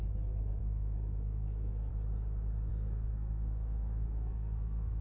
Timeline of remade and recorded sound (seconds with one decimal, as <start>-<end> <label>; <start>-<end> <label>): 0.0-0.6 recorded; 0.6-1.9 remade; 1.9-2.7 recorded; 2.7-5.0 remade